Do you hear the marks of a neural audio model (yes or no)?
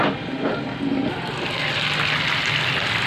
no